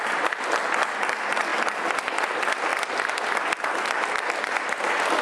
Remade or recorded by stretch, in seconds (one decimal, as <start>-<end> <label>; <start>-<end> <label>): 0.0-5.2 recorded